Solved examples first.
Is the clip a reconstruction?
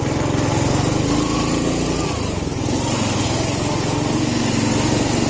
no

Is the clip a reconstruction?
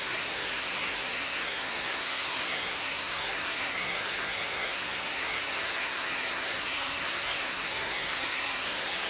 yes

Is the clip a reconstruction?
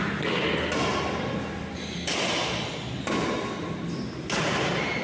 no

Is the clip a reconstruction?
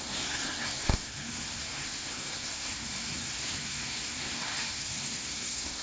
yes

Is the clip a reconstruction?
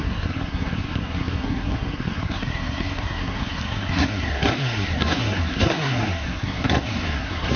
yes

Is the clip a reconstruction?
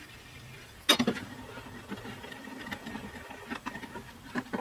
no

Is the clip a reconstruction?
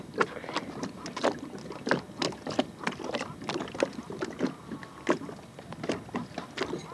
no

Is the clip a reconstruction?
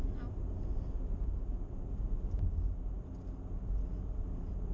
no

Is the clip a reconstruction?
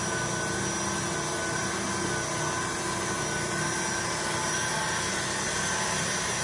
no